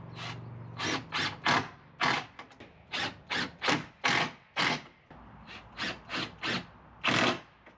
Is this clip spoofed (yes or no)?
no